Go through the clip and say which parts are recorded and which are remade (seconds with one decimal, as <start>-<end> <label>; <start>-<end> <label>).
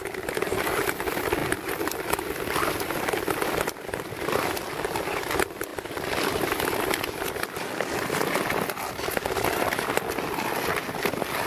0.0-11.5 recorded